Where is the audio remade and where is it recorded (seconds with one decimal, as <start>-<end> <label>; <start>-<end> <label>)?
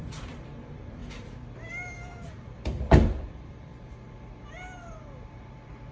0.0-3.7 remade; 3.7-4.9 recorded; 4.9-5.9 remade